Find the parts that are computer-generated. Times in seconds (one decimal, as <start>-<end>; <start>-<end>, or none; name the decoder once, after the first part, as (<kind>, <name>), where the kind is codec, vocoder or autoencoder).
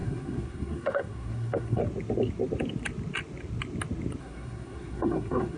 0.0-1.8 (codec, SNAC); 4.2-5.6